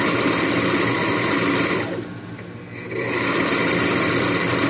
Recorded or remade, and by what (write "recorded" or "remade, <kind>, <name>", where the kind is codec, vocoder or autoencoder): recorded